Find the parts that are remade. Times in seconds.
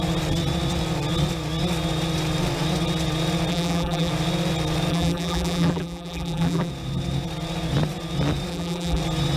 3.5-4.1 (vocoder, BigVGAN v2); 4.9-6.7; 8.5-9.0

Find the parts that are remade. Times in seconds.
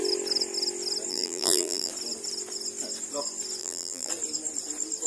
1.1-1.9 (vocoder, BigVGAN v2); 3.6-4.1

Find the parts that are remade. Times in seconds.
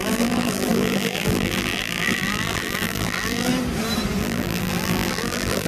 0.0-3.5 (vocoder, BigVGAN v2); 4.2-5.7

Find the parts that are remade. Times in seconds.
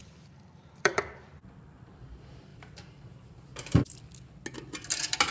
0.0-1.4 (vocoder, BigVGAN v2); 2.5-4.0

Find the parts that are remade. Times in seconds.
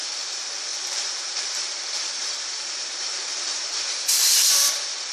0.0-5.1 (vocoder, BigVGAN v2)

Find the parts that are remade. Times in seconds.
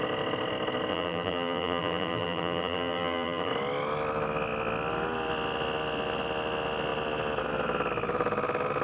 0.9-3.5 (vocoder, BigVGAN v2)